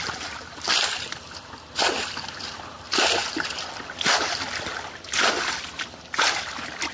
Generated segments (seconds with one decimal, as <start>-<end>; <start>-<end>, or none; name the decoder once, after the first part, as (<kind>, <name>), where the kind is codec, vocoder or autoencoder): none